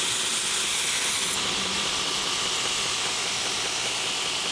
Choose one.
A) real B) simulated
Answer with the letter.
A